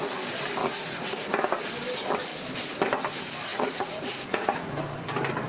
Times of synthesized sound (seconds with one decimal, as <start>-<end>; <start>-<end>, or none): 0.6-1.3; 3.5-4.7